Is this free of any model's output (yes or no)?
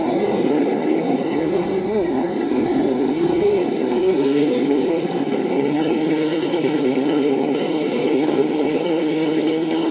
no